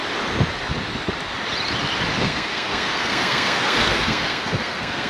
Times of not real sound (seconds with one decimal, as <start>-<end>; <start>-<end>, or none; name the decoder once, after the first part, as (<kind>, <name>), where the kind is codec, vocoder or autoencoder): 2.2-5.1 (codec, SNAC)